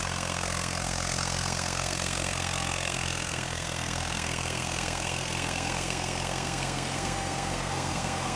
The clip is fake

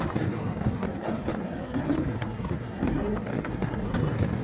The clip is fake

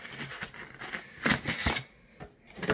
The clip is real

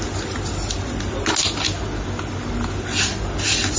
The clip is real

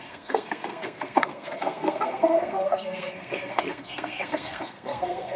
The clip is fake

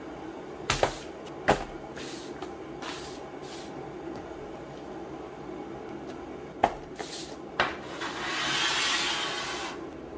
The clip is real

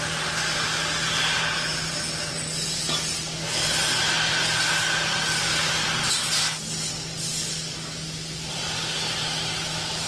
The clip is real